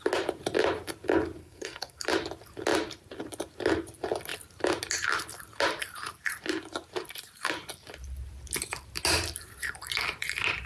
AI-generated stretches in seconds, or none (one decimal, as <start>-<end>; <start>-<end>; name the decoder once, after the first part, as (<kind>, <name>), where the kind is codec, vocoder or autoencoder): 1.4-2.0 (codec, SNAC)